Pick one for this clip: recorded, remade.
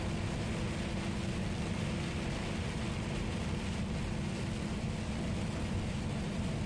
recorded